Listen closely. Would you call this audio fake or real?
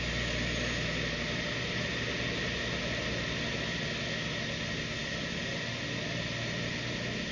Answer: real